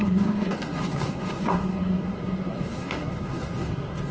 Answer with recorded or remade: remade